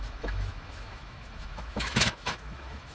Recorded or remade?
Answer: remade